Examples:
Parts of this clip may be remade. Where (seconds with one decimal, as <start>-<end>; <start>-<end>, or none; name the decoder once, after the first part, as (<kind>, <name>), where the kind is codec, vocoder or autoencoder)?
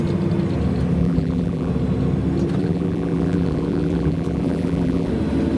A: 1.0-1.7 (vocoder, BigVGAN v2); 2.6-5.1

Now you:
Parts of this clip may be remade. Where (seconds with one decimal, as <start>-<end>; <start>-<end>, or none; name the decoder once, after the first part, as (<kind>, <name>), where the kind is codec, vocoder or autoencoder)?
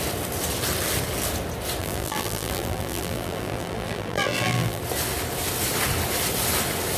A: 1.8-4.8 (vocoder, BigVGAN v2)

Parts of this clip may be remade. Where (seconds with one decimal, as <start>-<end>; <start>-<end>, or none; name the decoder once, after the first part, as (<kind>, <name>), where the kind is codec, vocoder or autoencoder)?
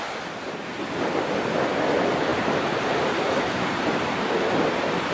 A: 2.3-4.2 (vocoder, BigVGAN v2)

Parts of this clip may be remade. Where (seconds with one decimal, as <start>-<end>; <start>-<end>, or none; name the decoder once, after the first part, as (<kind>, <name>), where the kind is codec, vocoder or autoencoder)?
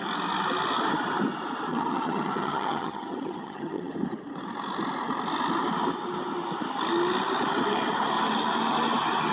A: 1.7-3.9 (vocoder, HiFi-GAN)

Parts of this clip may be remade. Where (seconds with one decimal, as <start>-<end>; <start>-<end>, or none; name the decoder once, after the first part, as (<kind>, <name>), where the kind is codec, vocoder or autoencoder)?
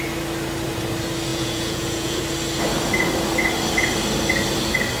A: 1.3-2.2 (vocoder, Vocos)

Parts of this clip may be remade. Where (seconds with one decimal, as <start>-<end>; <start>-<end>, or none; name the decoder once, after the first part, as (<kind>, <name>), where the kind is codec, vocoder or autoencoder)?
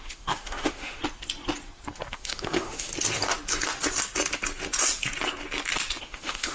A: 0.0-1.0 (autoencoder, DAC-VAE); 2.1-2.9; 6.0-6.5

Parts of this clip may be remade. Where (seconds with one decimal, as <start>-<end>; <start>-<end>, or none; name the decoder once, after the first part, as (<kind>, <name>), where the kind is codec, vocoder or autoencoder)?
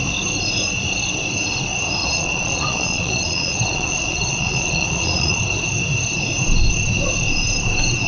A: 2.0-5.4 (vocoder, Vocos)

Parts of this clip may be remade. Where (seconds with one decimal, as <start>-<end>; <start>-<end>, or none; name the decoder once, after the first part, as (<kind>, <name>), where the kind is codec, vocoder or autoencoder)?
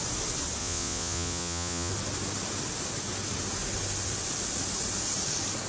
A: 0.6-1.9 (vocoder, Vocos)